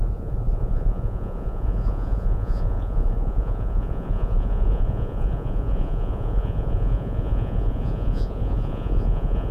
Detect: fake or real fake